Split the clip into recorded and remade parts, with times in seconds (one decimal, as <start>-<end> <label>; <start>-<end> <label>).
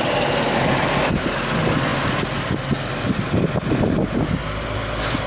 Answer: 0.0-5.3 recorded